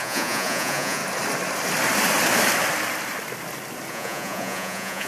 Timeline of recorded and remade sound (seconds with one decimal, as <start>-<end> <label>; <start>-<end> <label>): 0.0-1.0 remade; 1.0-3.9 recorded; 3.9-5.1 remade